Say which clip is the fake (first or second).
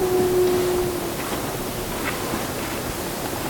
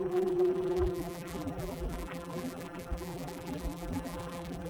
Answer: second